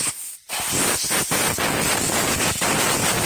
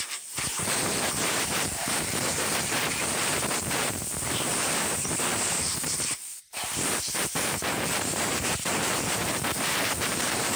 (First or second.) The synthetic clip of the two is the second